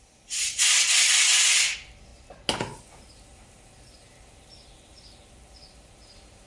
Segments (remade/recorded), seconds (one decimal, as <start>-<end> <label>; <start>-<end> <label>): 0.0-2.1 remade; 2.1-2.8 recorded; 2.8-6.5 remade